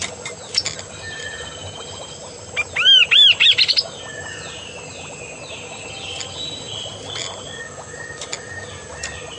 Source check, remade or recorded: recorded